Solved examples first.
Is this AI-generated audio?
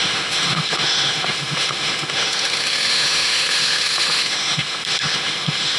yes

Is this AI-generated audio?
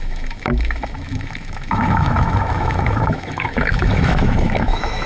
yes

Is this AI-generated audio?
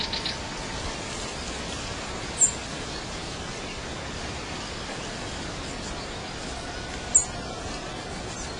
no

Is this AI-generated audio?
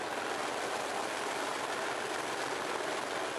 no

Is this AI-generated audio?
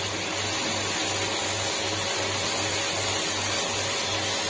no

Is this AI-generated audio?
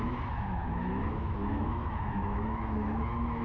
yes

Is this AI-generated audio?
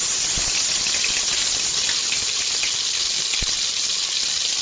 no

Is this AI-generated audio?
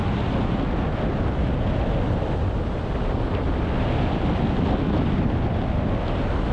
no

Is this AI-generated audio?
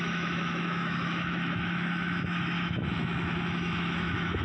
yes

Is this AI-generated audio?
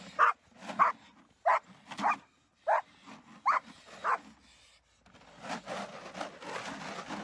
no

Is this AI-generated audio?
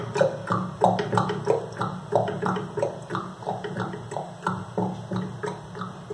no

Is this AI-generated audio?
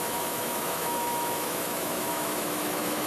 yes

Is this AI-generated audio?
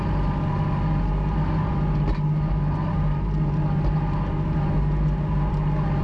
no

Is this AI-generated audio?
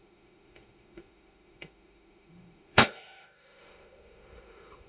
yes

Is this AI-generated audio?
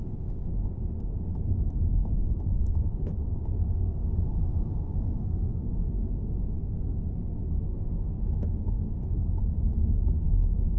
yes